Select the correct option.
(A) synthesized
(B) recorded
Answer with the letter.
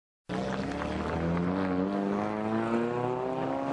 B